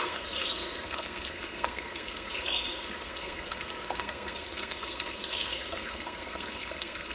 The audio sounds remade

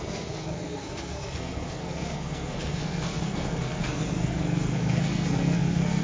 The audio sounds remade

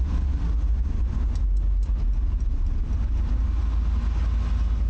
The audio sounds recorded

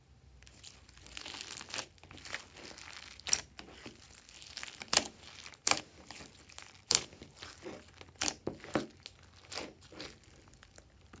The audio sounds recorded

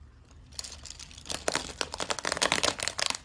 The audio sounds recorded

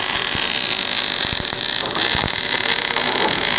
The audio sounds recorded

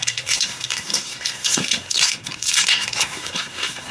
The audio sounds remade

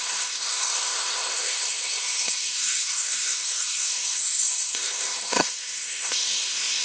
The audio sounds remade